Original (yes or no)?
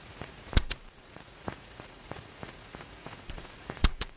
no